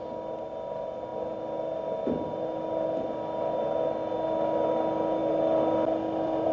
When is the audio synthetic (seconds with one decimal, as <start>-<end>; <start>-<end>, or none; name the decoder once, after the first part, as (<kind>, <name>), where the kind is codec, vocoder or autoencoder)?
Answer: none